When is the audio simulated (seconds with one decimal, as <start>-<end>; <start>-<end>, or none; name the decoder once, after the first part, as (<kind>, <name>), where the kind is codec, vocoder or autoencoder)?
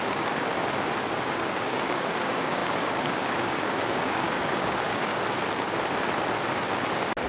0.0-0.5 (codec, DAC); 1.1-5.1